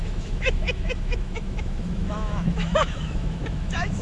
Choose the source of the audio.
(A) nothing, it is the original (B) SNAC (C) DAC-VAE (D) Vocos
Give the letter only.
C